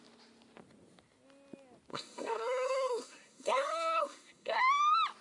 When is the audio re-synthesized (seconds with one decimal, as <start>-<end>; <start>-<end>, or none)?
1.9-4.6